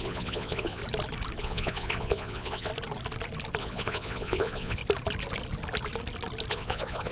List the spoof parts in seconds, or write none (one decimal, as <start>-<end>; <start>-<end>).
0.0-0.8; 1.4-2.7; 3.6-4.8; 6.5-7.1